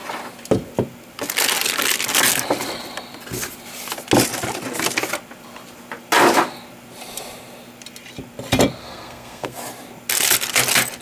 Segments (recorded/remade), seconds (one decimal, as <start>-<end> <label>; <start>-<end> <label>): 0.0-8.8 recorded; 8.8-9.6 remade; 9.6-11.0 recorded